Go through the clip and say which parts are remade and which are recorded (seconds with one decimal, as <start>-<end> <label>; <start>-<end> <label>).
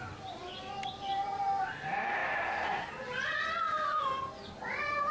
0.0-5.1 recorded